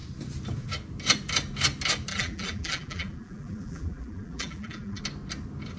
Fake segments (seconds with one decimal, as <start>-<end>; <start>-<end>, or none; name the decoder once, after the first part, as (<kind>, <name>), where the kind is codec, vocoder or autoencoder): 2.1-5.0 (vocoder, BigVGAN v2)